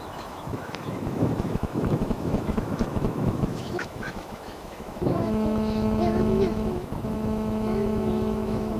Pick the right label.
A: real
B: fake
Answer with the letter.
B